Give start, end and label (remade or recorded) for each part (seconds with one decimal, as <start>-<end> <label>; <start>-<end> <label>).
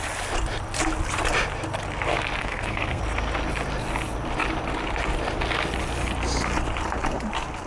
0.0-2.4 recorded; 2.4-3.0 remade; 3.0-7.7 recorded